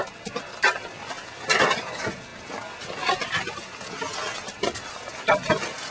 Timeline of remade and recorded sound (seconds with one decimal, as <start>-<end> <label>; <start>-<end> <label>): 0.0-5.9 recorded